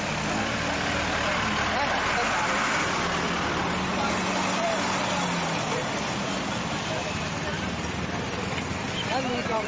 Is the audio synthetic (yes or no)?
no